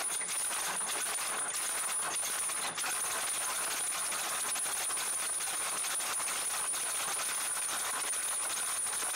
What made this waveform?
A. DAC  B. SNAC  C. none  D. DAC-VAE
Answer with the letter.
C